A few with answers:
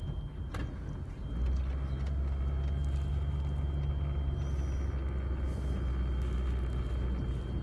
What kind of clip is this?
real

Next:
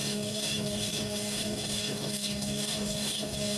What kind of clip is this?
fake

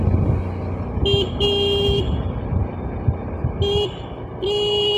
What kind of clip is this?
real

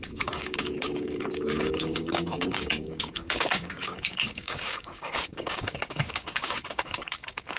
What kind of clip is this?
fake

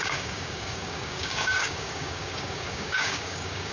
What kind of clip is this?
fake